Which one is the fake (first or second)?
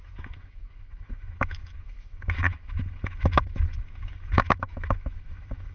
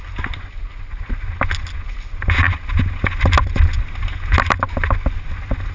first